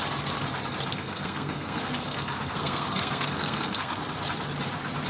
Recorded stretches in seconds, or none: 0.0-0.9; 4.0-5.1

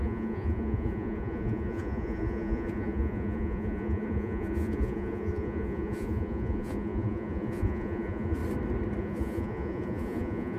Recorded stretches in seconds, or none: 8.4-9.0

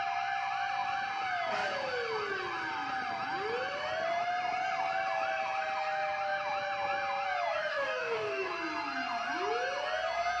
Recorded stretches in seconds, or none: 0.0-7.7; 8.5-10.4

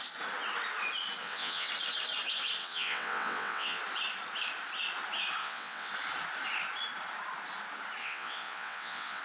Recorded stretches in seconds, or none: 0.0-1.2; 1.7-2.6; 3.8-5.4; 5.9-8.0

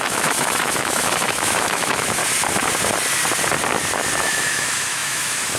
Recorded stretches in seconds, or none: 2.2-4.2

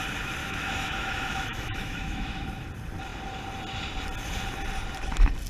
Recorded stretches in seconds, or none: 0.0-0.4; 2.5-5.5

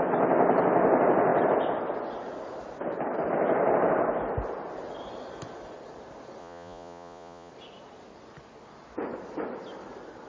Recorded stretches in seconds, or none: 0.0-6.4; 7.5-10.3